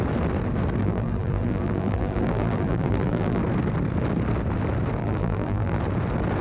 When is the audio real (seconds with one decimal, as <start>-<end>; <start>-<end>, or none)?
0.0-0.8; 3.4-5.0; 5.8-6.4